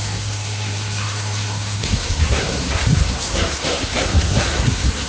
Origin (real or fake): fake